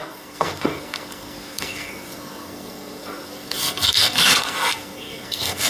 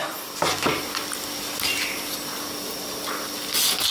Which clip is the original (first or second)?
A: second